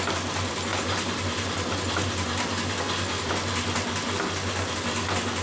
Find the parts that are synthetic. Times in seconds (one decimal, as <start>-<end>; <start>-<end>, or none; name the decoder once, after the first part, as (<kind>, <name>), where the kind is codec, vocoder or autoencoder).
none